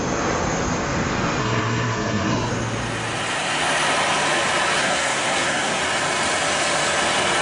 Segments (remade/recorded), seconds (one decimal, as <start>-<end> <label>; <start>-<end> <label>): 0.0-1.4 recorded; 1.4-2.5 remade; 2.5-4.8 recorded; 4.8-5.8 remade; 5.8-7.4 recorded